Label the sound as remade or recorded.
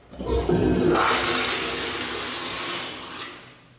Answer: recorded